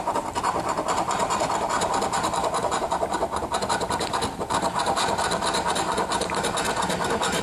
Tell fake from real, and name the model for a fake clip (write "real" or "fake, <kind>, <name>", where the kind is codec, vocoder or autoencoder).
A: real